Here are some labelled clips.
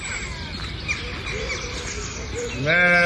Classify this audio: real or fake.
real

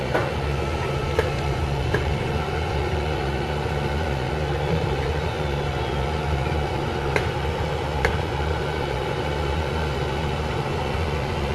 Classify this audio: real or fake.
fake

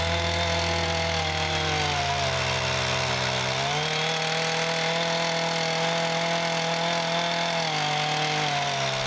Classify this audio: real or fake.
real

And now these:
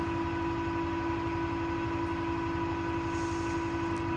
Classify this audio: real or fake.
real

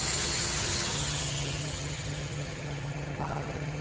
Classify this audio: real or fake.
fake